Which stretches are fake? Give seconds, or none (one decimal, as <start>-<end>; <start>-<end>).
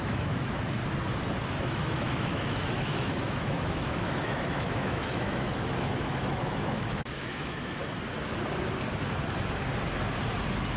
0.0-0.8; 1.6-7.8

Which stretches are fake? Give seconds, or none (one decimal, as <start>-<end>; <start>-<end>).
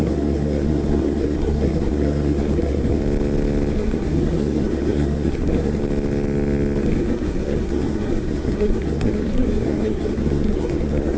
0.0-3.0; 3.7-5.8; 6.8-11.2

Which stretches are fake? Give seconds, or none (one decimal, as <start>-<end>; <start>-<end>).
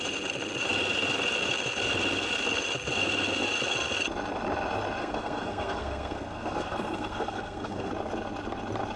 5.0-7.9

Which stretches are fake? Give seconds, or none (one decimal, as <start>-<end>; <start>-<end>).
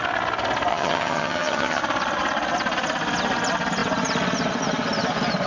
0.7-1.8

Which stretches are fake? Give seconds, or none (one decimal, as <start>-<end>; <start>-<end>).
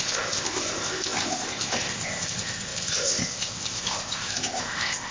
0.0-5.1